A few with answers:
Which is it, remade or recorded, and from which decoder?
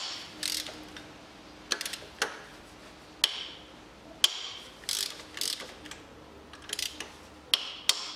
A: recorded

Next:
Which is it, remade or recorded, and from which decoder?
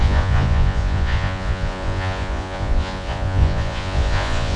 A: remade, vocoder, Vocos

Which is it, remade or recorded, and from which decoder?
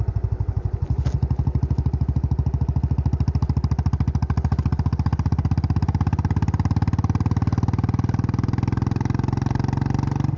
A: recorded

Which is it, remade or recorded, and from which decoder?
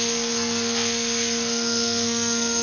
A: remade, codec, SNAC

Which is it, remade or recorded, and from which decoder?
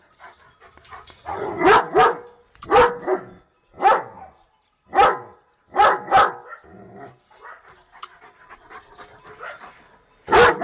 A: recorded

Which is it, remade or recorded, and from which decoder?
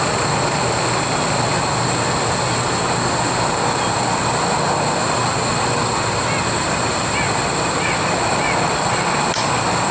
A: recorded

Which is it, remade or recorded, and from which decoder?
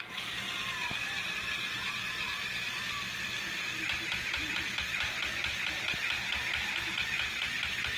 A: recorded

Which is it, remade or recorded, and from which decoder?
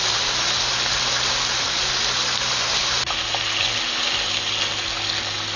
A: recorded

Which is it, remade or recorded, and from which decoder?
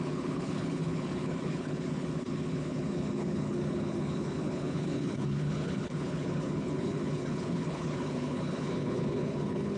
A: remade, codec, HILCodec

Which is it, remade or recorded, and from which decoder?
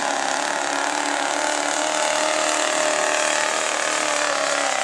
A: recorded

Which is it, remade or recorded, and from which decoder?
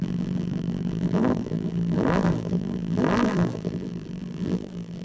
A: remade, vocoder, BigVGAN v2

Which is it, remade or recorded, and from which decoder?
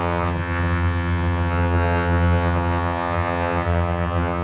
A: remade, vocoder, HiFi-GAN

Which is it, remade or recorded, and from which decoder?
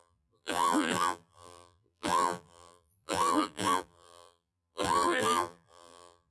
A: remade, vocoder, BigVGAN v2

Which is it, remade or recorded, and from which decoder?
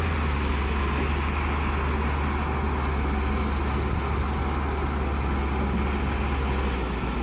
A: recorded